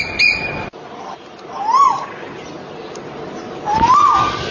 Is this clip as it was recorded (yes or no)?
yes